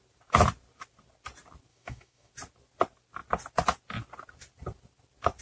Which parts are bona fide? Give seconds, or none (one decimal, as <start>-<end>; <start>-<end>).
0.0-1.7; 2.3-5.4